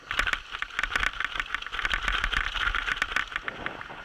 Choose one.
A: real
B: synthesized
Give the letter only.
A